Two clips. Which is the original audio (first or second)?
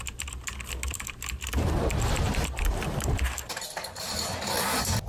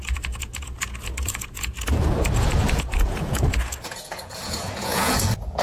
first